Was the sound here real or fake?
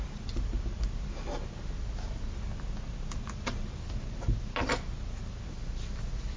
real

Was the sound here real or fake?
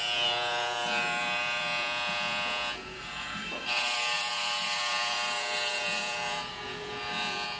fake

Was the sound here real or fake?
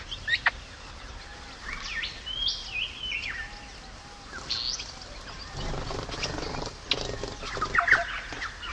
real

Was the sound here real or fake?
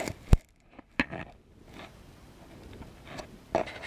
real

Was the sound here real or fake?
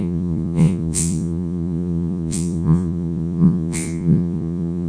fake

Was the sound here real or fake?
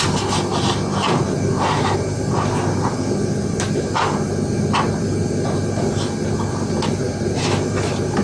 real